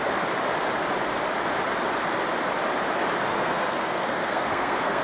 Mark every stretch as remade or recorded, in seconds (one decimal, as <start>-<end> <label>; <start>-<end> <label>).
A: 0.0-3.3 recorded; 3.3-5.0 remade